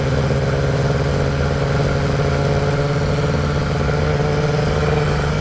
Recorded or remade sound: recorded